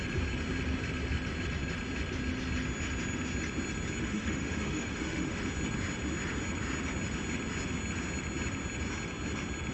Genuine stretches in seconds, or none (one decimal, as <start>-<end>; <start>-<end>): 0.0-4.0; 5.4-9.7